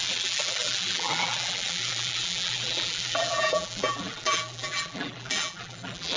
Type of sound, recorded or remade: remade